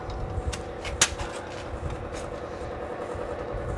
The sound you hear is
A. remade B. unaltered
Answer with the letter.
B